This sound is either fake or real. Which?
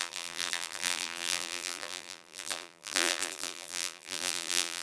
fake